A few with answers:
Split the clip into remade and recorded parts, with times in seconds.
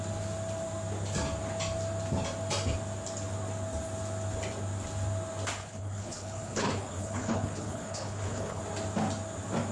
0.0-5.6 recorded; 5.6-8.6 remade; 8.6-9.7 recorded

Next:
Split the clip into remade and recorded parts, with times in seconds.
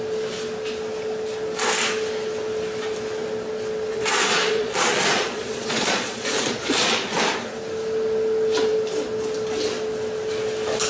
0.0-3.9 recorded; 3.9-7.2 remade; 7.2-10.9 recorded